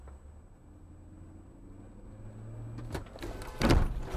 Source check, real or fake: real